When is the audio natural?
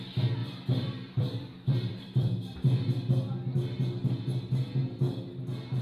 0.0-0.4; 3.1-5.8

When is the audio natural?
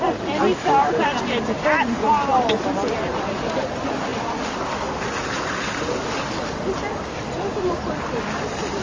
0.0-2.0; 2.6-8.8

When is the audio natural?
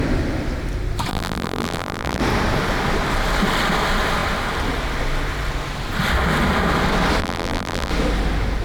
0.0-1.1; 2.2-7.2; 7.9-8.6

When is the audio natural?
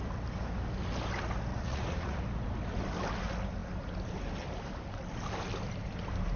0.0-1.5; 2.2-6.4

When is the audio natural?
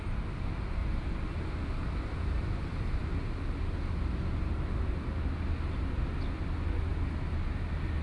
0.0-0.8; 3.0-8.0